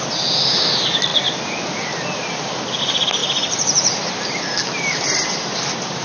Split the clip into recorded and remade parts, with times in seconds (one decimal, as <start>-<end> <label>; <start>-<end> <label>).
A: 0.0-6.0 recorded